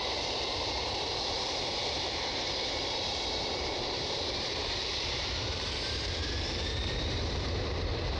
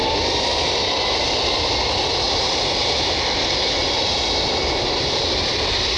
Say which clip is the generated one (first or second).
first